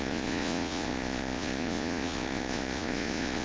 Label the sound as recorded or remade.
remade